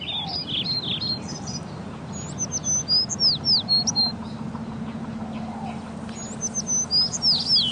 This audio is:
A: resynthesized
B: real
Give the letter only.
B